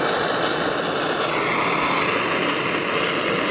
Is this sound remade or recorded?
recorded